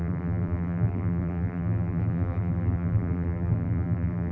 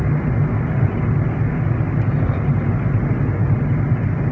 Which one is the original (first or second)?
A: second